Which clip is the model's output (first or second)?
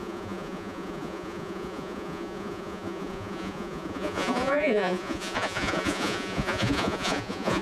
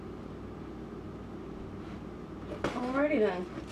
first